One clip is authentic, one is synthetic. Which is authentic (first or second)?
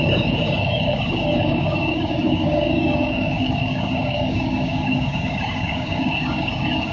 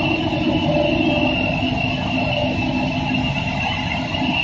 second